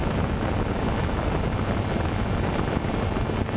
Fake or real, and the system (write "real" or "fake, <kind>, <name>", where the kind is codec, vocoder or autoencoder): real